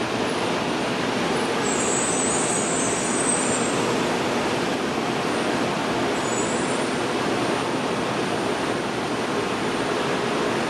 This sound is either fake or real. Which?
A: fake